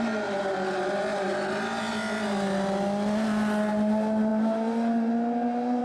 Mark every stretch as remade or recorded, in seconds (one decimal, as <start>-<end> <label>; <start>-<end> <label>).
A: 0.0-5.8 recorded